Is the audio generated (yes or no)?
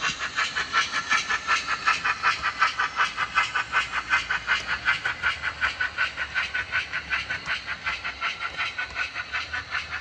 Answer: no